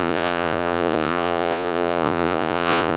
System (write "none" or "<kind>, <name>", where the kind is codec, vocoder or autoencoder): vocoder, Vocos